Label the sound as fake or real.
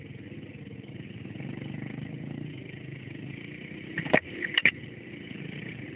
real